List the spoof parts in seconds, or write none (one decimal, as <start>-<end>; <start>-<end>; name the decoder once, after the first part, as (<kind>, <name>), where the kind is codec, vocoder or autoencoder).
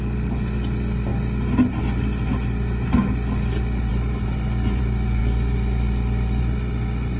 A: none